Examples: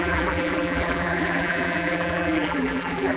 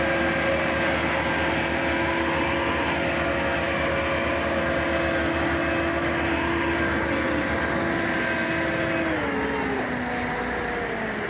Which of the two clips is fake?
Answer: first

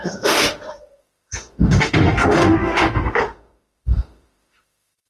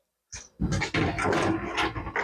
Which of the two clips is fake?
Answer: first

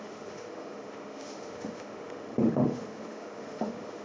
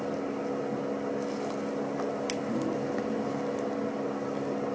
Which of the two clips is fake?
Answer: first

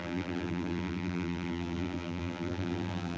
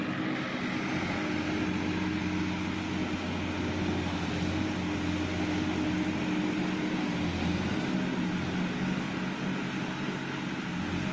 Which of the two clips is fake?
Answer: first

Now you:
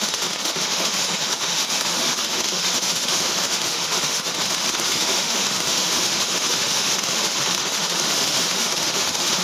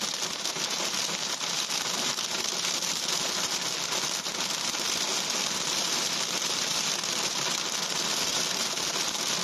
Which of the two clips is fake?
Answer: first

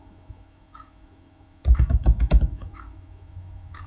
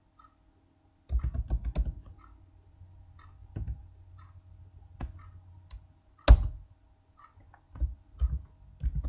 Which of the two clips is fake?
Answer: first